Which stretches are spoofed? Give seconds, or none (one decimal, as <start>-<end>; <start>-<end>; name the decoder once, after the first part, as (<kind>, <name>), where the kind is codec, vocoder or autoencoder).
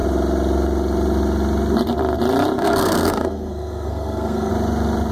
2.6-4.5 (codec, SNAC)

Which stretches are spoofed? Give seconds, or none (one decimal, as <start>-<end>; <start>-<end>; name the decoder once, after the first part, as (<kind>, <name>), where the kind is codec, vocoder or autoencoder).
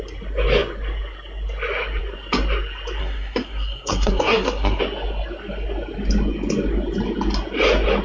3.0-4.8 (codec, SNAC)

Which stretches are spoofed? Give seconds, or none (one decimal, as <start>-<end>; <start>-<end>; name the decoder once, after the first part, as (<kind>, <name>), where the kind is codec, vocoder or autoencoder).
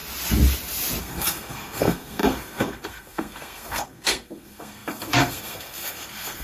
1.0-6.4 (codec, SNAC)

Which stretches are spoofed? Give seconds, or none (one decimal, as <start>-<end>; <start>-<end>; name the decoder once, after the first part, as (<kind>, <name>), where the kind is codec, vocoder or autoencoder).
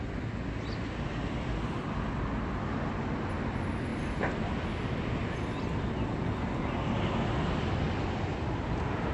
none